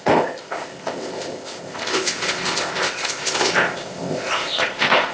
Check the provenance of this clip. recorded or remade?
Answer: remade